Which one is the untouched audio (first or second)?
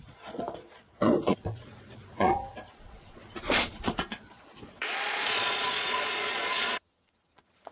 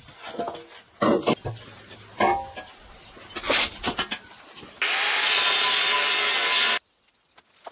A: second